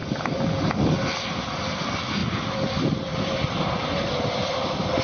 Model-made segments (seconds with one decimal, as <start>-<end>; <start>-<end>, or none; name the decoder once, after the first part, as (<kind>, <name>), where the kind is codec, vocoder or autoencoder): none